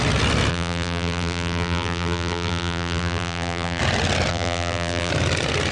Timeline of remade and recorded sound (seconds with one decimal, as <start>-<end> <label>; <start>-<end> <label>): 0.0-0.5 recorded; 0.5-3.8 remade; 3.8-4.3 recorded; 4.3-5.1 remade; 5.1-5.7 recorded